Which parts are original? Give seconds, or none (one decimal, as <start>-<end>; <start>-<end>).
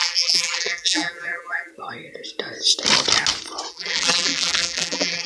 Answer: 1.7-3.7